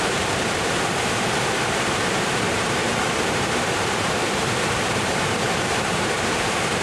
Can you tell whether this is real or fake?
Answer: fake